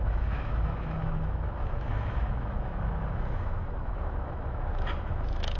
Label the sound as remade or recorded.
remade